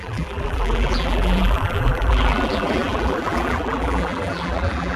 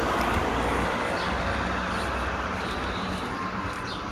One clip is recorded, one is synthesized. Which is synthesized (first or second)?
first